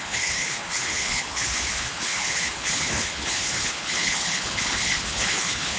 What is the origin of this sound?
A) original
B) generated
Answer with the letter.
B